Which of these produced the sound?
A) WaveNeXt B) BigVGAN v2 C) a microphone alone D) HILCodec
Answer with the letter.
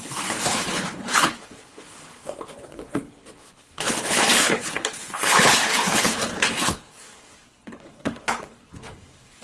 D